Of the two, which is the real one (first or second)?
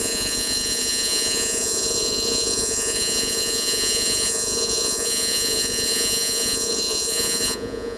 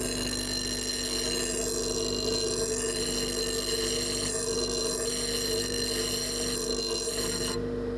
second